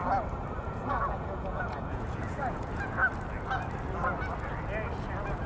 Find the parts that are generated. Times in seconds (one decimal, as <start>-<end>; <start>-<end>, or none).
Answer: 0.6-3.0

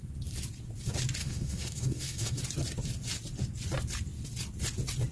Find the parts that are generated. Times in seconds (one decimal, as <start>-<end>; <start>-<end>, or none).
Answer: 1.2-2.4

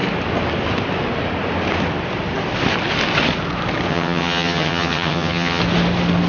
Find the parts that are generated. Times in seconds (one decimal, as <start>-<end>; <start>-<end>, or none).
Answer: 3.9-5.6

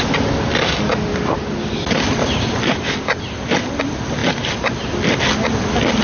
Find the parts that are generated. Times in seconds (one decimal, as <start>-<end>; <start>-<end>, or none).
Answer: none

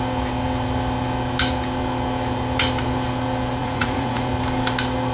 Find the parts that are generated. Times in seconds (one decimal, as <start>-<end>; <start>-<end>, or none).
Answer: 3.6-4.3

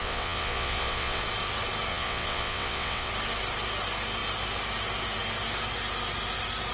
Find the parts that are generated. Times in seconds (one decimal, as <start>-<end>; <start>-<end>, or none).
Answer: 0.0-1.2; 1.9-3.1

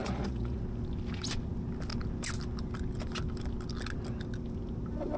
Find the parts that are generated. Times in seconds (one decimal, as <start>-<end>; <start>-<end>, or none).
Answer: 0.0-0.6